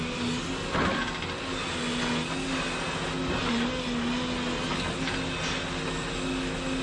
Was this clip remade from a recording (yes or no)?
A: no